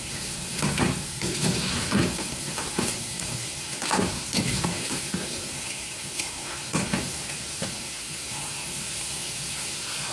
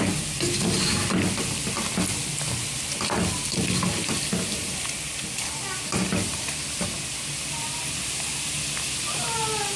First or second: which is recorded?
second